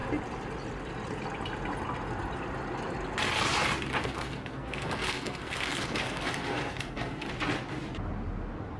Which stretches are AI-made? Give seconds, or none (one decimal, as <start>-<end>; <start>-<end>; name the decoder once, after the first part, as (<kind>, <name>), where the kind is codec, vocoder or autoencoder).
4.0-7.3 (codec, SNAC)